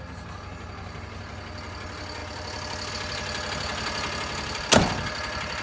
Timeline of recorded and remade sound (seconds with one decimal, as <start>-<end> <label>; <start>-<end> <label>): 0.0-5.6 recorded